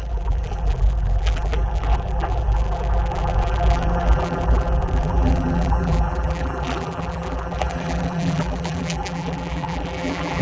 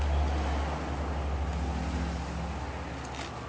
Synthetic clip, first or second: first